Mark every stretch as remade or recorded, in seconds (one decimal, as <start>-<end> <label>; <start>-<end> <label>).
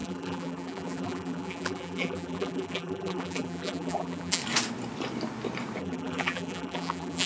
0.0-4.4 remade; 4.4-5.8 recorded; 5.8-7.3 remade